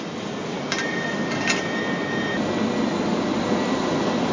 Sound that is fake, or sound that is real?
real